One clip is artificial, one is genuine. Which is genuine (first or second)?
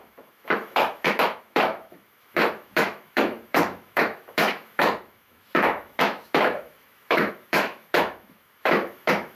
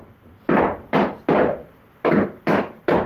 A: second